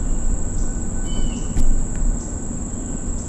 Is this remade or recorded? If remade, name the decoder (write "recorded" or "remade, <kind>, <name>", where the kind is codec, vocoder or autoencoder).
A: recorded